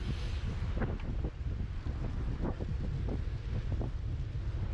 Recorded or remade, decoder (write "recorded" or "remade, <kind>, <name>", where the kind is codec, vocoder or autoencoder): recorded